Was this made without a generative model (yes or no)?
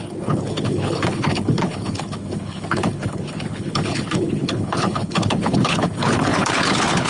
no